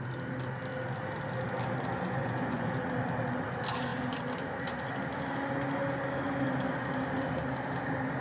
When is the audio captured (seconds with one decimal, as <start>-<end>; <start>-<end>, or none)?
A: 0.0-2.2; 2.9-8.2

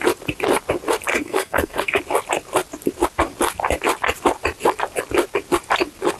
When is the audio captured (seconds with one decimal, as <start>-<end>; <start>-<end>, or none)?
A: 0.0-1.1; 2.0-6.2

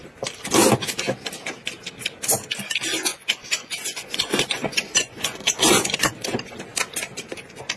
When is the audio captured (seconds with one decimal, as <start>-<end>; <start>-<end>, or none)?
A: 0.0-3.1; 6.1-7.8

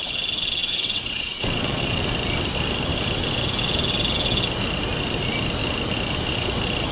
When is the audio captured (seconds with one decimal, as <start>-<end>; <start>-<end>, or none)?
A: 0.0-0.6; 2.0-6.9

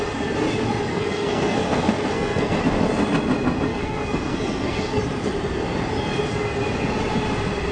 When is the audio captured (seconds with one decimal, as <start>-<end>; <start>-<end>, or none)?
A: 0.0-0.9; 2.6-3.7; 5.0-7.7

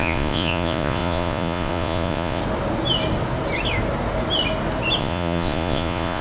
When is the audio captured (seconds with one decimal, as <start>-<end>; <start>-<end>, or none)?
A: 2.4-5.0

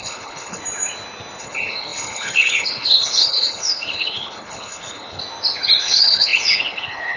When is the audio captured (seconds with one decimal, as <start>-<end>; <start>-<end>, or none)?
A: 0.6-1.4; 5.2-5.8